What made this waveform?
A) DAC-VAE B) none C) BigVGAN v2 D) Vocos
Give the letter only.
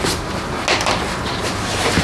B